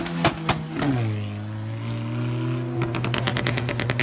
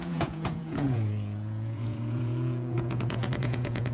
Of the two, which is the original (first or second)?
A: first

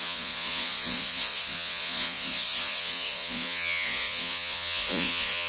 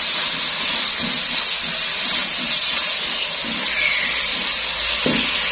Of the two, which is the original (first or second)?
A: second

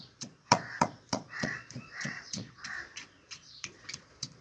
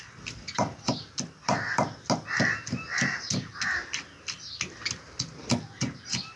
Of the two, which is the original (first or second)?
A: second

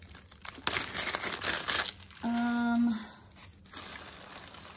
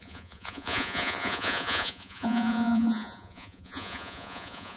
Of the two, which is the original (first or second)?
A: first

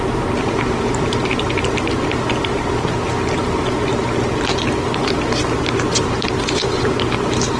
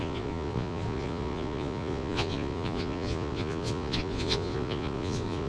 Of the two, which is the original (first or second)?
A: first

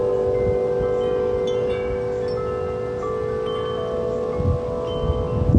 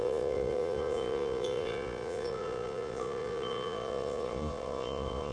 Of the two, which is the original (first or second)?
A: first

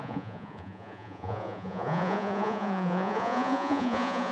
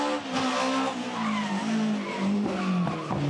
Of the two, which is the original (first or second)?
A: second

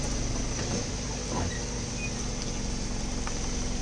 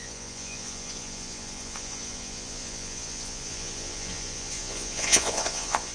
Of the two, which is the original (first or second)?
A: first